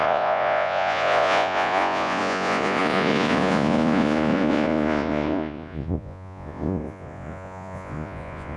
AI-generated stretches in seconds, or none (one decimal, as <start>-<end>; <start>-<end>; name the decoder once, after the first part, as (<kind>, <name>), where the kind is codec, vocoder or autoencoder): 0.0-8.6 (vocoder, Vocos)